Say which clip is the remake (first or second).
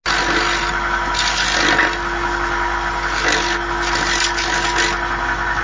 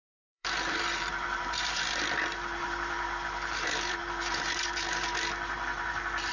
second